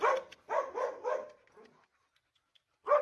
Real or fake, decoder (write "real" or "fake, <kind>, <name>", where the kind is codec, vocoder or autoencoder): real